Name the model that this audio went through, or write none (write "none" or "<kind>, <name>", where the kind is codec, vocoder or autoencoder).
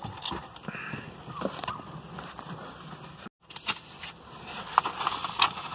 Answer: none